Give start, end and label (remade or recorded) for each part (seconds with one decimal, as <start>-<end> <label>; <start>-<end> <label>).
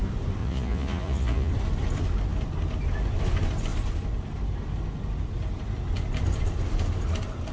0.0-0.4 recorded; 0.4-1.5 remade; 1.5-7.5 recorded